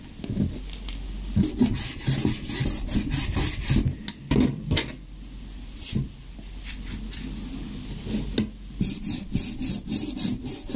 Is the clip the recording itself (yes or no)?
yes